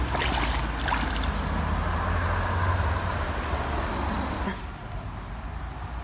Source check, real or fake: real